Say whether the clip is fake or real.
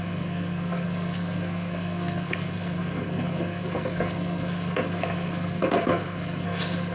fake